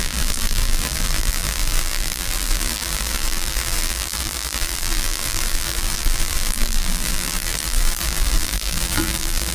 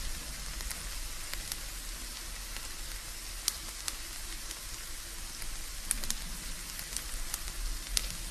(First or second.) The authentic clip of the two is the second